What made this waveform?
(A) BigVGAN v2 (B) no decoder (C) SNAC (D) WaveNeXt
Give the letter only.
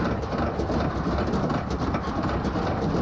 B